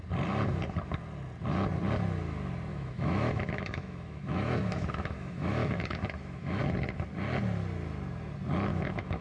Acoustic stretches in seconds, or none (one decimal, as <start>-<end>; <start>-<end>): 0.0-2.7; 6.6-8.7

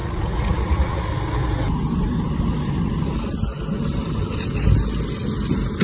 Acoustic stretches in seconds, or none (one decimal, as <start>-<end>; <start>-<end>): 1.0-5.8

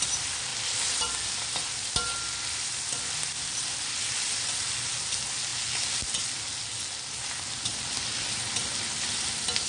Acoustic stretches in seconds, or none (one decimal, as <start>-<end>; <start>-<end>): 0.0-9.7